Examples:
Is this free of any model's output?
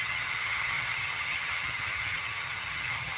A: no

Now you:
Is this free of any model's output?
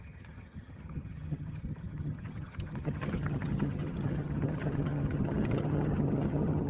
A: no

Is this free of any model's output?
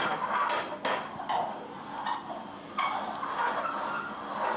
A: yes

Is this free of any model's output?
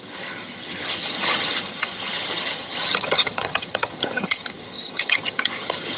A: no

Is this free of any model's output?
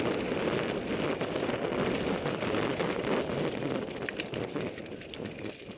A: yes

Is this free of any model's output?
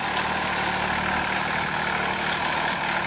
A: yes